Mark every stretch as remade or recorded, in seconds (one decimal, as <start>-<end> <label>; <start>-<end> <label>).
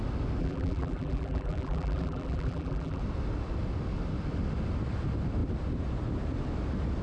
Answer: 0.0-0.4 recorded; 0.4-3.0 remade; 3.0-7.0 recorded